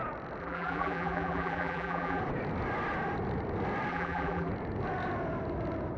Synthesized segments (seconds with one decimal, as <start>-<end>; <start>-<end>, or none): 0.4-2.2; 3.9-4.5